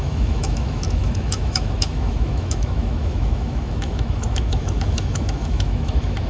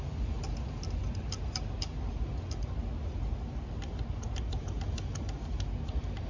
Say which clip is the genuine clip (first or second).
second